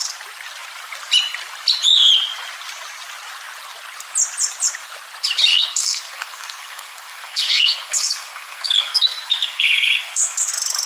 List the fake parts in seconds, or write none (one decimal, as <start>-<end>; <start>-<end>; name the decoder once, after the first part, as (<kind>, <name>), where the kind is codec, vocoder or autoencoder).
5.5-10.5 (codec, SNAC)